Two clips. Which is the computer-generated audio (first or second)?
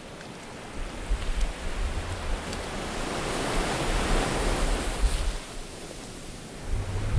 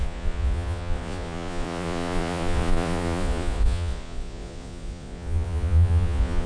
second